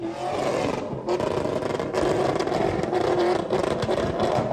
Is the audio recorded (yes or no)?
yes